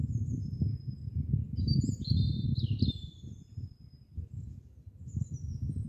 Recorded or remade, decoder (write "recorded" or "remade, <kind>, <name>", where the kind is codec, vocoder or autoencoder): recorded